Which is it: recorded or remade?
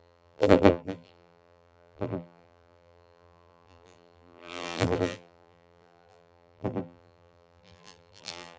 remade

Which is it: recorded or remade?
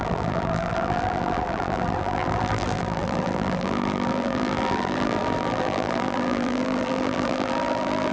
remade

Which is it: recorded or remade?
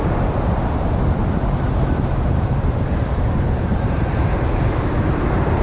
remade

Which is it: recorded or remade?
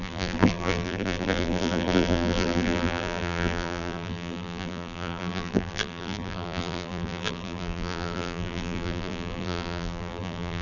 remade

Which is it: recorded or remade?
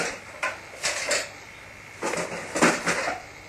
recorded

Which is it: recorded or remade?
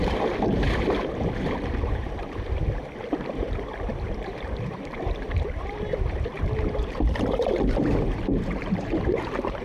remade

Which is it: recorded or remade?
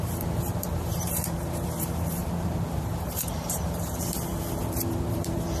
remade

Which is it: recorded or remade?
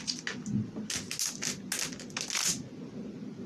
recorded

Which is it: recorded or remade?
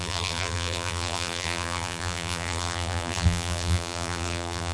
remade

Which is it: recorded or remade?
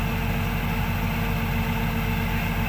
recorded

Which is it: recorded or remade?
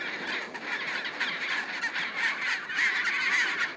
recorded